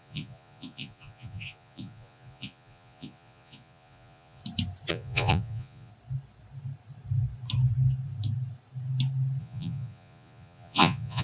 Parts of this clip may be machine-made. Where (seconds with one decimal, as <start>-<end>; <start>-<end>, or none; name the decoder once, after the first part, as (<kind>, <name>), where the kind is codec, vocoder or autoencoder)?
0.0-4.4 (vocoder, Vocos); 4.9-5.9; 9.4-11.2